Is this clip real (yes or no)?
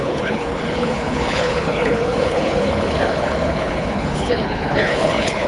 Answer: no